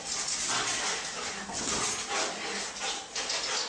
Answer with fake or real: real